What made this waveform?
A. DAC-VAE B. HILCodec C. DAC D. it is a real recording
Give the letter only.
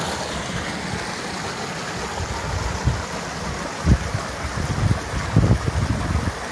D